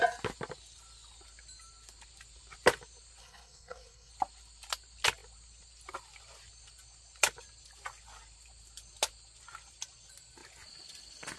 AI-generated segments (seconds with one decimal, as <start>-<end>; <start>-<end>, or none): 3.2-4.1